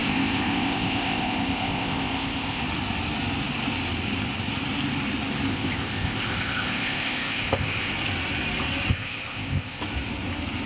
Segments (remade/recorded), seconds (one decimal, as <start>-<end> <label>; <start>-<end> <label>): 0.0-2.6 remade; 2.6-5.5 recorded; 5.5-7.9 remade; 7.9-8.9 recorded; 8.9-9.8 remade; 9.8-10.7 recorded